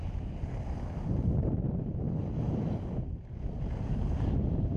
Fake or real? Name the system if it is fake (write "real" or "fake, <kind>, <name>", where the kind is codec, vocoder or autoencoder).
real